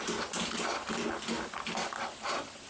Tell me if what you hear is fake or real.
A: real